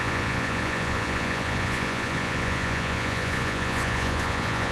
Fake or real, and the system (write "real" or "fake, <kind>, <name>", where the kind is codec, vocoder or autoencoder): fake, vocoder, Vocos